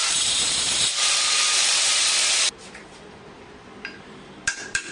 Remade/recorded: remade